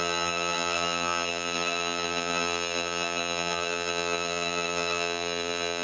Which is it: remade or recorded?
remade